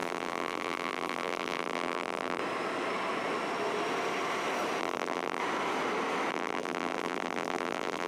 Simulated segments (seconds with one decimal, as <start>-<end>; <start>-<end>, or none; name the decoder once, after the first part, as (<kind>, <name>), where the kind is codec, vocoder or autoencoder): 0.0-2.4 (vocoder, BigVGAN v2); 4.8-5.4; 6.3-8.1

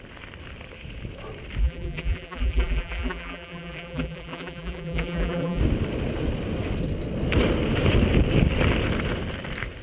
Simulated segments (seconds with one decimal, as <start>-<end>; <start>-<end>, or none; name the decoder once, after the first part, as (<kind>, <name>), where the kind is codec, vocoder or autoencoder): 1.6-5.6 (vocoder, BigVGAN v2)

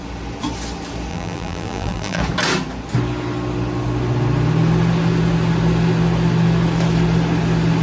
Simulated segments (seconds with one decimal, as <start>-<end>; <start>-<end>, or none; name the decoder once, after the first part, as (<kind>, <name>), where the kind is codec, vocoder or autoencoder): 1.1-2.2 (vocoder, BigVGAN v2)

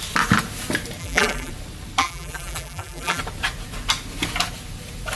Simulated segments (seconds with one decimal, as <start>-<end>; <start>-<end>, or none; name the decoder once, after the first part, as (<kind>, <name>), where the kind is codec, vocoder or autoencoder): 1.0-1.5 (vocoder, BigVGAN v2); 2.0-3.2